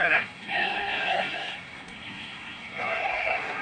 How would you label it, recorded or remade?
remade